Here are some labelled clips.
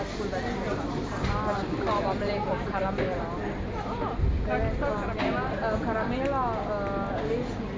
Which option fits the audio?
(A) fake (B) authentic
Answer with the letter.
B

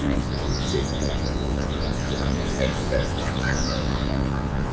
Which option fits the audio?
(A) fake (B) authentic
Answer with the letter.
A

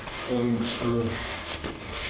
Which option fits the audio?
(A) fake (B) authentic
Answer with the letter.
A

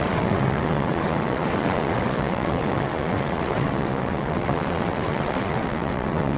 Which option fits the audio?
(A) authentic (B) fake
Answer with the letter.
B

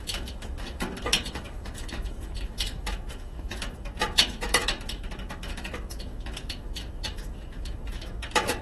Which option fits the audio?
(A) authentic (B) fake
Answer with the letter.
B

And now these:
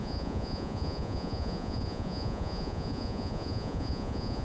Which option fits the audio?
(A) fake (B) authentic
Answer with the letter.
A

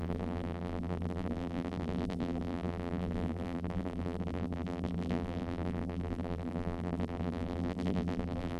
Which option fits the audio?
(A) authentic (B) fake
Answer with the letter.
B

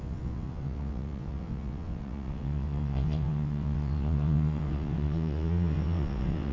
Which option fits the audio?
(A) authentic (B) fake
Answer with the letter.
B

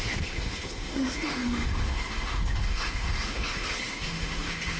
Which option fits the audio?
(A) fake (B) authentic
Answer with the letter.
A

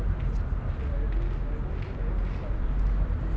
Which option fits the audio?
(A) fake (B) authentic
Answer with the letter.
B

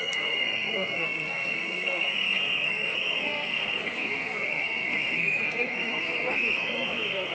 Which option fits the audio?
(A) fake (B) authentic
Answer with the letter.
A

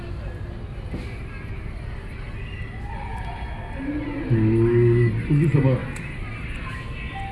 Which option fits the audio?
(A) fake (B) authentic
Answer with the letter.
B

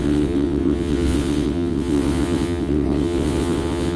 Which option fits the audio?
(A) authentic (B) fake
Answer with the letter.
B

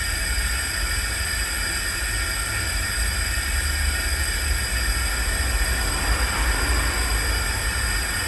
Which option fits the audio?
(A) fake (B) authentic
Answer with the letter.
B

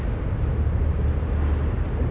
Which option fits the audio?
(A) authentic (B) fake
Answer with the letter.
A